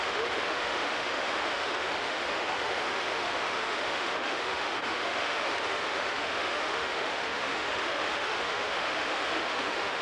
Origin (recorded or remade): remade